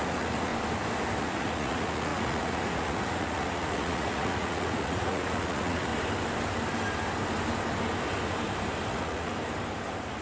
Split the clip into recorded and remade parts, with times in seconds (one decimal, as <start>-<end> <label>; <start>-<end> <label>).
0.0-0.5 remade; 0.5-1.2 recorded; 1.2-5.9 remade; 5.9-8.9 recorded; 8.9-9.3 remade; 9.3-10.2 recorded